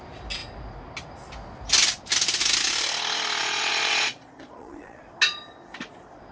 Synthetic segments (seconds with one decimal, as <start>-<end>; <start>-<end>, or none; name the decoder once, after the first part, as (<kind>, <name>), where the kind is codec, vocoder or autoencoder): 3.4-5.0 (vocoder, Vocos)